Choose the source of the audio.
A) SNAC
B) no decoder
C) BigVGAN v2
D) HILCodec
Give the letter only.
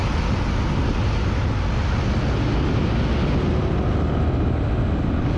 B